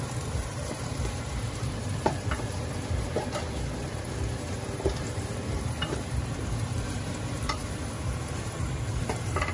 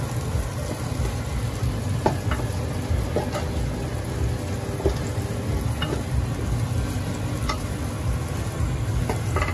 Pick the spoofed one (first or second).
first